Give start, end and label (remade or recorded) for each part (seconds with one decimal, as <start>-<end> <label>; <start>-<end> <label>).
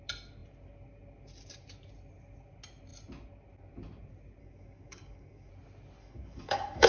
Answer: 0.0-4.4 recorded; 4.4-5.5 remade; 5.5-6.0 recorded; 6.0-6.9 remade